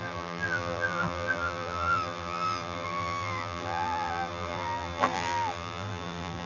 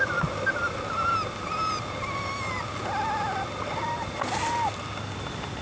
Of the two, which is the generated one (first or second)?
first